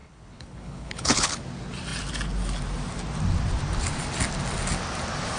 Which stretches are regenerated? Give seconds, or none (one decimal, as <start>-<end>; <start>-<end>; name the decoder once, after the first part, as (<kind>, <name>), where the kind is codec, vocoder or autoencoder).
0.0-1.4 (codec, HILCodec)